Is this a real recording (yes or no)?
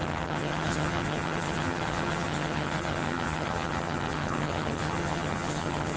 no